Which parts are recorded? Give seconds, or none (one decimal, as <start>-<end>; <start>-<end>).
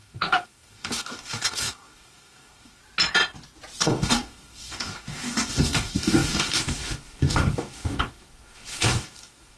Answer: 2.8-3.8